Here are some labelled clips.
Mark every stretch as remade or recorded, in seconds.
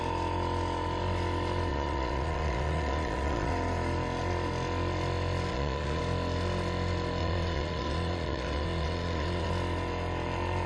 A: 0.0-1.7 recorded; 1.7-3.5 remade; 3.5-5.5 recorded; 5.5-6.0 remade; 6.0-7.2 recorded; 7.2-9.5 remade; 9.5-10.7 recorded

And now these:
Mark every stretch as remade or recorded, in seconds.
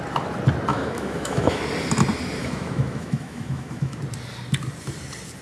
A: 0.0-0.7 recorded; 0.7-1.6 remade; 1.6-2.4 recorded; 2.4-4.0 remade; 4.0-5.4 recorded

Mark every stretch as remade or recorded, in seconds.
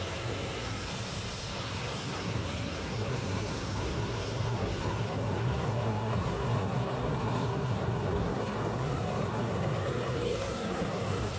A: 0.0-0.9 remade; 0.9-1.6 recorded; 1.6-11.4 remade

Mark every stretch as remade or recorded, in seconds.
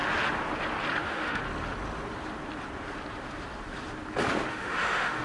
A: 0.0-1.0 recorded; 1.0-1.4 remade; 1.4-4.5 recorded; 4.5-5.2 remade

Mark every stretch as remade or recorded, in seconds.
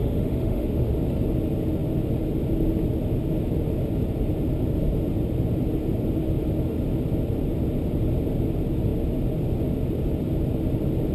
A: 0.0-0.9 remade; 0.9-11.1 recorded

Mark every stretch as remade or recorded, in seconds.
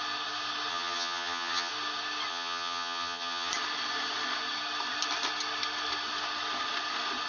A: 0.0-0.7 recorded; 0.7-1.7 remade; 1.7-2.3 recorded; 2.3-3.5 remade; 3.5-7.3 recorded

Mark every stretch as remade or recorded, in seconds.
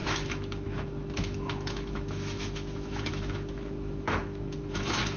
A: 0.0-5.2 remade